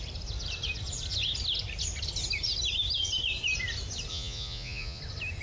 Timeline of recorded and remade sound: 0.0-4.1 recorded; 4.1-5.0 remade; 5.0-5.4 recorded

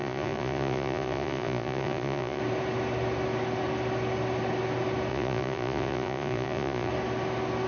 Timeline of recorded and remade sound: 0.0-2.4 remade; 2.4-5.1 recorded; 5.1-6.9 remade; 6.9-7.7 recorded